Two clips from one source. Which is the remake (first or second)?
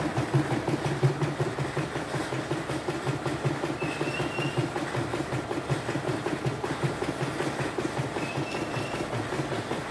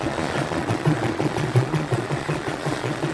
second